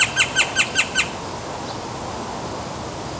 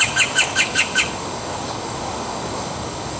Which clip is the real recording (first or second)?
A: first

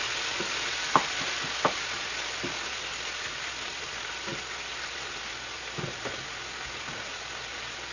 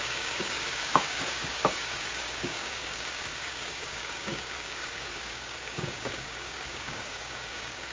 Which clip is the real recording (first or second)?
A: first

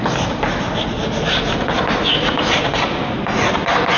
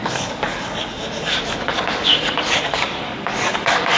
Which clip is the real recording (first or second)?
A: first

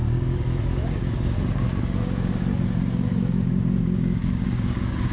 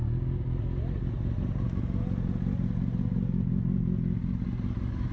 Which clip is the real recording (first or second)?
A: second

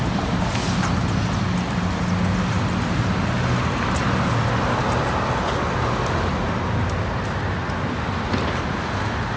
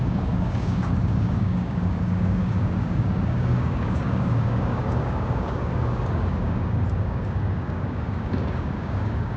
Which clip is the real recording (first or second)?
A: first